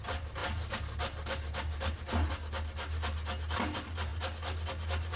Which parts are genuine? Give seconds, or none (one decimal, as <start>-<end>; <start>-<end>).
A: 0.0-5.2